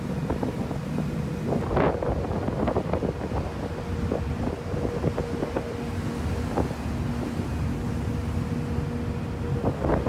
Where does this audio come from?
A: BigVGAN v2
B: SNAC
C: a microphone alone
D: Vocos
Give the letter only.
C